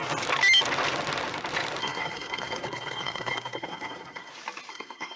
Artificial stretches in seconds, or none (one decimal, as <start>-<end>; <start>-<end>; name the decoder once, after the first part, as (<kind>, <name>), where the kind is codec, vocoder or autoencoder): 1.8-4.3 (codec, SNAC); 4.7-5.2